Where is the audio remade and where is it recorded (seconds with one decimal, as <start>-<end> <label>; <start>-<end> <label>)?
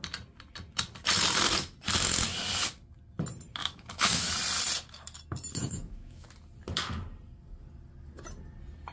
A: 0.0-3.6 recorded; 3.6-4.3 remade; 4.3-5.5 recorded; 5.5-6.3 remade; 6.3-8.9 recorded